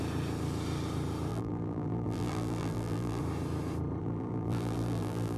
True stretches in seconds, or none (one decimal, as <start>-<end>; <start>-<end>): 0.0-1.3; 3.2-4.0